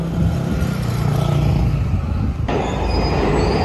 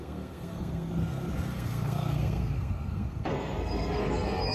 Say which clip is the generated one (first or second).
second